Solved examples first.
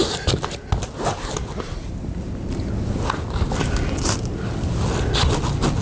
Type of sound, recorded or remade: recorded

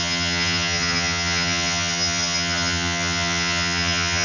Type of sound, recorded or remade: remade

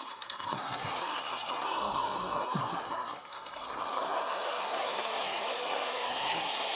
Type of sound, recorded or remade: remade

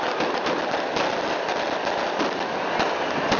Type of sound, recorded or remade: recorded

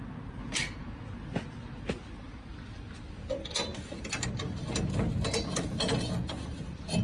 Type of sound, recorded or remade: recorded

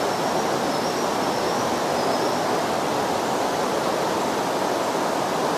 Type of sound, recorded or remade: recorded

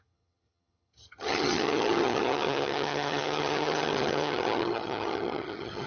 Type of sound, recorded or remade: remade